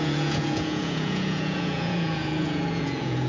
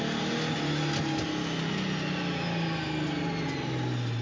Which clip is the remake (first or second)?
first